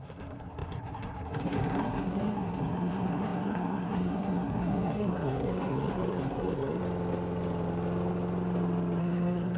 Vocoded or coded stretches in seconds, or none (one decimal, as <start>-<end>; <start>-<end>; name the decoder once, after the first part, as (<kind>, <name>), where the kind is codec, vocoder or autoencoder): 0.0-6.8 (codec, SNAC); 9.0-9.6